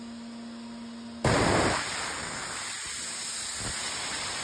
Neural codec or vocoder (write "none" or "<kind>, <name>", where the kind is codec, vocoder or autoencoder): none